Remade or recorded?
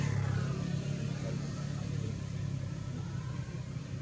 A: recorded